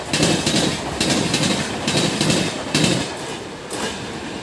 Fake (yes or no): no